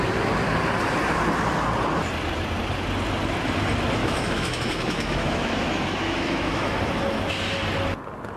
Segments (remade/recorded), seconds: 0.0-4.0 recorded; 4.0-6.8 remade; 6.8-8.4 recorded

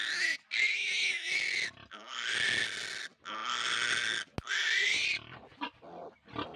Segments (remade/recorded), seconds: 0.0-6.6 recorded

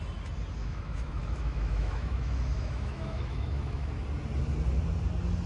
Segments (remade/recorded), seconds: 0.0-0.6 recorded; 0.6-3.9 remade; 3.9-5.5 recorded

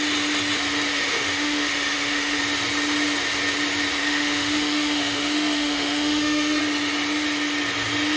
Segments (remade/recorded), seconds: 0.0-0.9 recorded; 0.9-2.4 remade; 2.4-4.0 recorded; 4.0-6.6 remade; 6.6-8.2 recorded

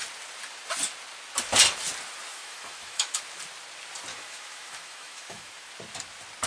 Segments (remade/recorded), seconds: 0.0-2.3 recorded; 2.3-3.2 remade; 3.2-4.1 recorded; 4.1-5.7 remade; 5.7-6.5 recorded

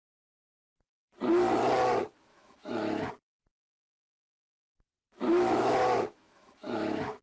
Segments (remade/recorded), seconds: 0.0-2.3 recorded; 2.3-3.1 remade; 3.1-3.8 recorded; 3.8-7.2 remade

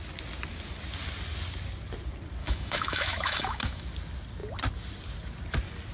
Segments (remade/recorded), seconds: 0.0-2.4 recorded; 2.4-3.8 remade; 3.8-5.9 recorded

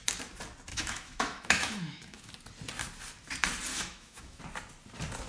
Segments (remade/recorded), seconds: 0.0-0.7 recorded; 0.7-2.3 remade; 2.3-3.7 recorded; 3.7-4.4 remade; 4.4-5.3 recorded